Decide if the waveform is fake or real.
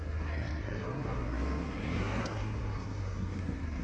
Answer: fake